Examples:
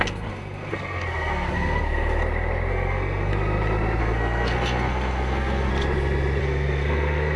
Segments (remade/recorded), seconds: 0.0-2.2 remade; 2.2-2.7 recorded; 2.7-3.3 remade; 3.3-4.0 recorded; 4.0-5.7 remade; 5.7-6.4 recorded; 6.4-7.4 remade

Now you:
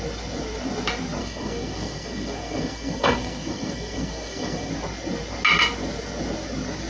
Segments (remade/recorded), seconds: 0.0-1.2 recorded; 1.2-4.7 remade; 4.7-6.9 recorded

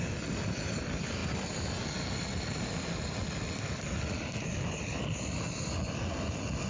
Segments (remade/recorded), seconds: 0.0-6.7 recorded

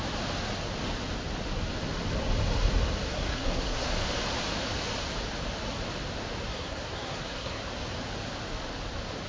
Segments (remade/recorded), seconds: 0.0-3.1 recorded; 3.1-3.9 remade; 3.9-6.5 recorded; 6.5-7.6 remade; 7.6-9.3 recorded